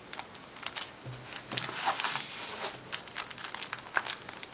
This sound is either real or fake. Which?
real